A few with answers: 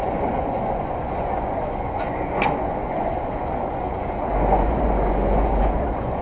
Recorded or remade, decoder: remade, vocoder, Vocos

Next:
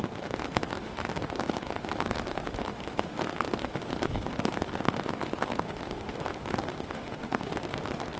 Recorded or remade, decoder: remade, autoencoder, DAC-VAE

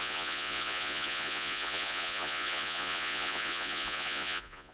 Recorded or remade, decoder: remade, vocoder, Vocos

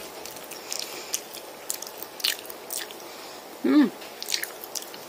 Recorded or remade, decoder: recorded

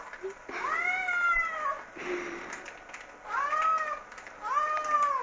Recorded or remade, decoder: recorded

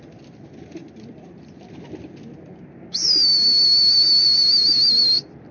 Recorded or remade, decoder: recorded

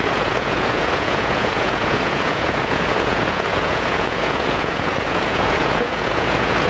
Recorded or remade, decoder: remade, vocoder, Vocos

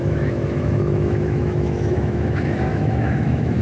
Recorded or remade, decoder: remade, autoencoder, DAC-VAE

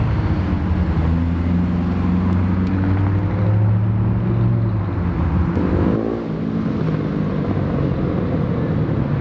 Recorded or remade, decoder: recorded